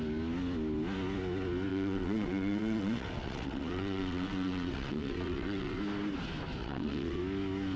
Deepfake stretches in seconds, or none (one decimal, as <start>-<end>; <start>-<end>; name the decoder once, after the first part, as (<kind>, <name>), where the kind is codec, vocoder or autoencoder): 1.7-5.8 (vocoder, WaveNeXt); 6.6-7.2